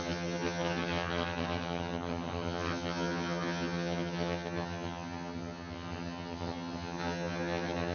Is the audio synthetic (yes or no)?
yes